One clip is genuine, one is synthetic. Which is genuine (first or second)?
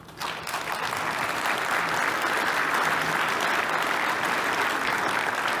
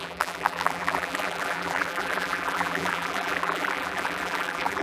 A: first